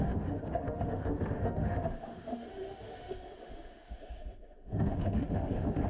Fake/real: fake